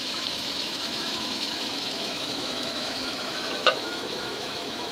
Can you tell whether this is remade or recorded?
remade